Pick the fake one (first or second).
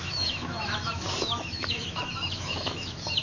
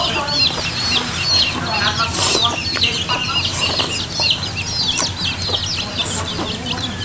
first